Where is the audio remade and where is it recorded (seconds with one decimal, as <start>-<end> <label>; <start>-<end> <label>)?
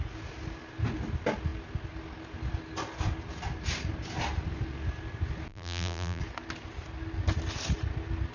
0.0-5.5 recorded; 5.5-6.2 remade; 6.2-8.3 recorded